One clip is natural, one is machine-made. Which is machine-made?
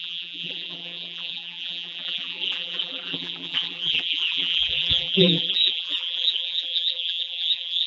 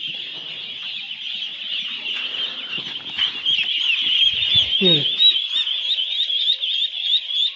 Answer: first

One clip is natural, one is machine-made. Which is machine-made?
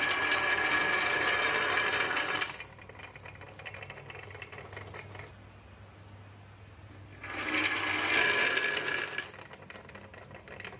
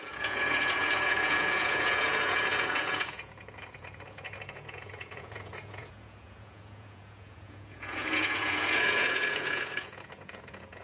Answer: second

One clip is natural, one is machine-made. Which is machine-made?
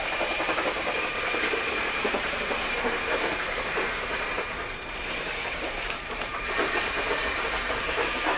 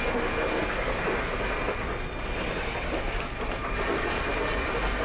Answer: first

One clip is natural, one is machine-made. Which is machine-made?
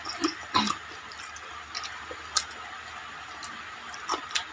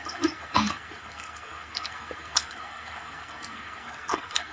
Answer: second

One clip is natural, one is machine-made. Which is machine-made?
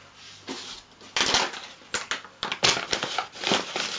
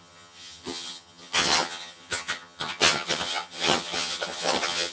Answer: second